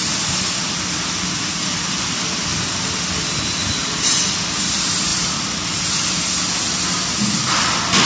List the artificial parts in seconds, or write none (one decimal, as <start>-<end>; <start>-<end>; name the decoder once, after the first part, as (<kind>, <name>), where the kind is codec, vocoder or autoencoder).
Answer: 0.0-3.8 (vocoder, BigVGAN v2); 4.6-5.1